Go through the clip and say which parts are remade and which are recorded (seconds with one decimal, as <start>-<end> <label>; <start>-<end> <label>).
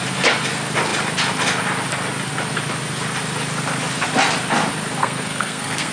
0.0-5.0 recorded; 5.0-5.9 remade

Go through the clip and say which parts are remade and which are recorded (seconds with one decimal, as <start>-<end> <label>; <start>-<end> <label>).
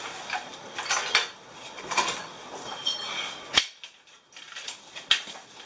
0.0-5.7 recorded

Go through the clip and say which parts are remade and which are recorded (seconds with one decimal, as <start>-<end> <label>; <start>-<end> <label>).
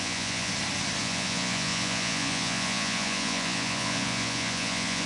0.0-0.5 remade; 0.5-1.0 recorded; 1.0-5.1 remade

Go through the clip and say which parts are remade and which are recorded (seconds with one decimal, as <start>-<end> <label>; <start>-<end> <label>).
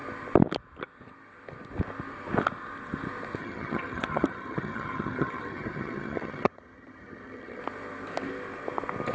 0.0-3.4 recorded; 3.4-7.6 remade; 7.6-9.1 recorded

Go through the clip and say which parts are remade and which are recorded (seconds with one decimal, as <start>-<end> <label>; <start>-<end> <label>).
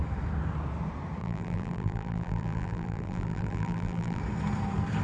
0.0-1.2 recorded; 1.2-4.2 remade; 4.2-5.0 recorded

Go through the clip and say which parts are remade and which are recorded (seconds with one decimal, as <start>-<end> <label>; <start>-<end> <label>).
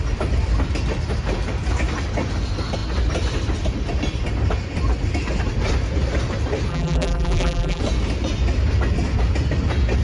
0.0-6.7 recorded; 6.7-7.8 remade; 7.8-10.0 recorded